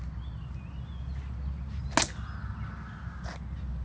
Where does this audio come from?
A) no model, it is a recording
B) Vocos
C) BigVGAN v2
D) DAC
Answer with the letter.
A